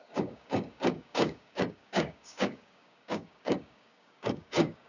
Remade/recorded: remade